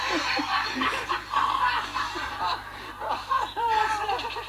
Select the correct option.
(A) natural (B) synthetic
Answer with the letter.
B